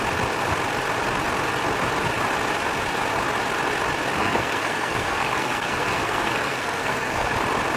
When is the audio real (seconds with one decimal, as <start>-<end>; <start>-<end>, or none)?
0.0-4.2; 7.3-7.8